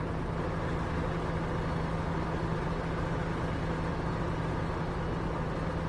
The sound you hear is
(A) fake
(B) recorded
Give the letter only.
B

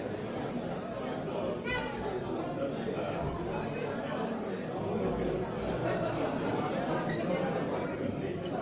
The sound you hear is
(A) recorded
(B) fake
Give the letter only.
A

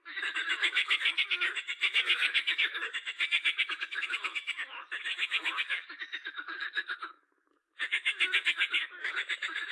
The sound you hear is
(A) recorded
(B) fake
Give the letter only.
B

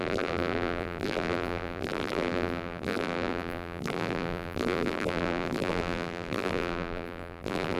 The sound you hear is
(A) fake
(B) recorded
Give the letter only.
A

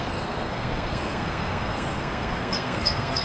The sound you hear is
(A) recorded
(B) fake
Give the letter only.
B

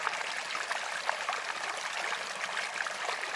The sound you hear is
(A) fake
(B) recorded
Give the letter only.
B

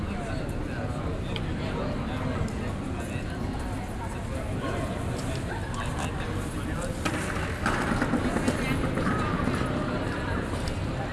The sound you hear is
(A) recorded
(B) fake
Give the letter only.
A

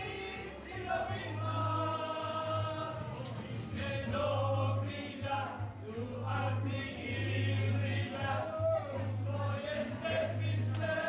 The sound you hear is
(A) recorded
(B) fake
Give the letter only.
A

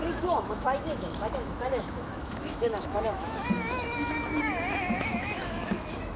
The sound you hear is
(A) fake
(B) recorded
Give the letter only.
A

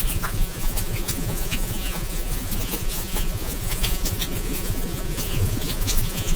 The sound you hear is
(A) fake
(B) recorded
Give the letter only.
A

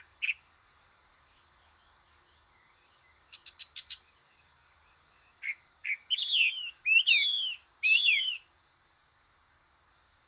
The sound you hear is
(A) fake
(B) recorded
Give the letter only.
A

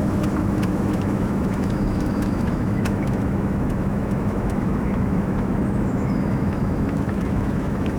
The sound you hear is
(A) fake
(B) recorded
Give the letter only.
A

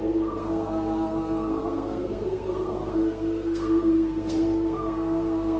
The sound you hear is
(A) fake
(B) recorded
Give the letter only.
A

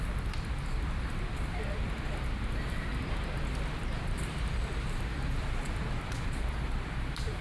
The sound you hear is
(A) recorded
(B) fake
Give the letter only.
B